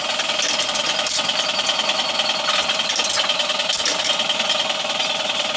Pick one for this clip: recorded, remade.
recorded